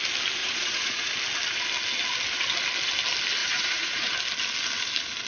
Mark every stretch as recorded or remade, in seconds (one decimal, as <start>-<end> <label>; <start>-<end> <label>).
0.0-0.4 recorded; 0.4-1.1 remade; 1.1-3.4 recorded; 3.4-4.1 remade; 4.1-5.3 recorded